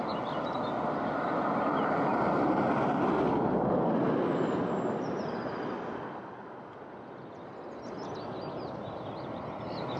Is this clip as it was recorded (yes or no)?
yes